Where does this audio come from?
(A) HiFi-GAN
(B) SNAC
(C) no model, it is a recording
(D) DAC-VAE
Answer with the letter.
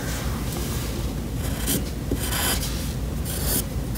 C